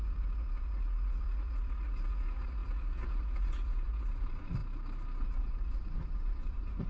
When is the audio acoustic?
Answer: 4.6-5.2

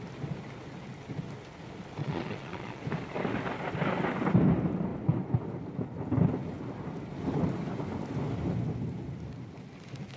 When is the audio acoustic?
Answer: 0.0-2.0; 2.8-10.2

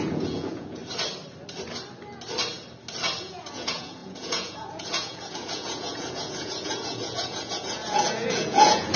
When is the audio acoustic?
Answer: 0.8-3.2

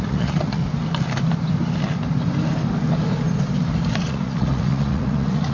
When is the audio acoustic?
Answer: 0.6-3.9